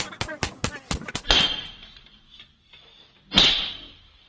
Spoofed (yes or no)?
no